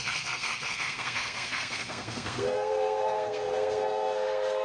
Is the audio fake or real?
fake